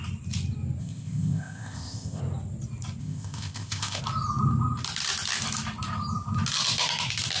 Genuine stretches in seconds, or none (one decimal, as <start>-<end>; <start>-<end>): 0.0-0.8; 2.2-3.0; 4.0-7.4